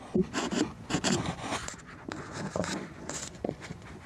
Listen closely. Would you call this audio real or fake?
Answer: fake